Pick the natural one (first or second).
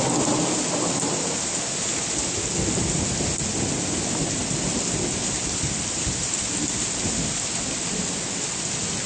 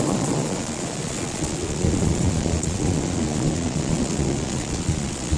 first